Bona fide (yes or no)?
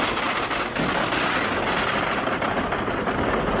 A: yes